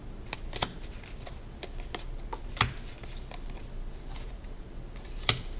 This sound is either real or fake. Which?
real